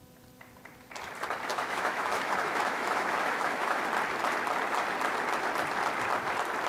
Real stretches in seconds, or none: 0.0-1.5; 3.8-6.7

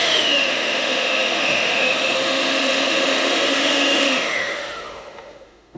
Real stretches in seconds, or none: none

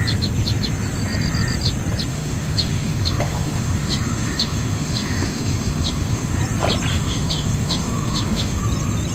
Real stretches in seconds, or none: 0.0-2.1; 6.4-6.9; 8.6-9.1

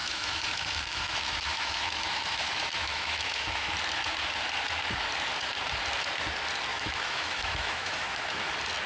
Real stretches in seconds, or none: 3.7-6.7; 8.5-8.9

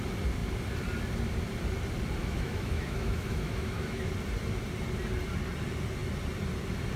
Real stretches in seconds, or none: 0.0-2.2; 4.1-7.0

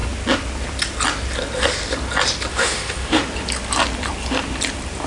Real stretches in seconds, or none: 0.0-2.5; 3.2-5.1

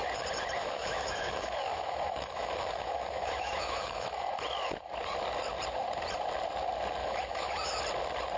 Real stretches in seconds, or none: 0.0-0.6; 4.3-7.0; 7.8-8.4

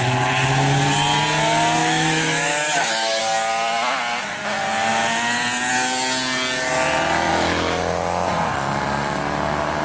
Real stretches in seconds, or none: 0.0-1.8; 3.2-7.3; 7.8-9.8